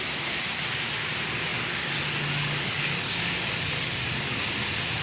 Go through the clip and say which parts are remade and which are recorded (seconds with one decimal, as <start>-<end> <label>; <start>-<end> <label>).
0.0-1.5 recorded; 1.5-4.5 remade; 4.5-5.0 recorded